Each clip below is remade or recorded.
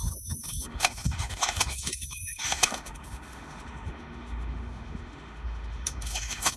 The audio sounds remade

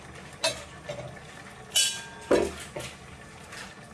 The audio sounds recorded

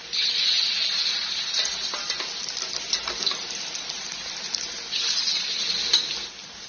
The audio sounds recorded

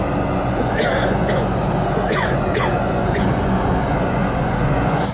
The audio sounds remade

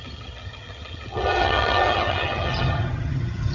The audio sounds remade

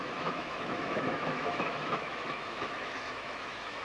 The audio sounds remade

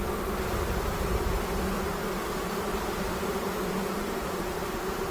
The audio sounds remade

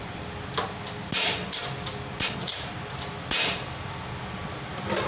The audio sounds recorded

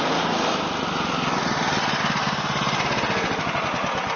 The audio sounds recorded